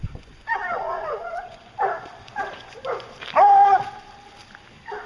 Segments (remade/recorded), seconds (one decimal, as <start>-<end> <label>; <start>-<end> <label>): 0.0-3.1 remade; 3.1-5.1 recorded